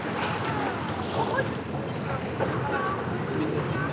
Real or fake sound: real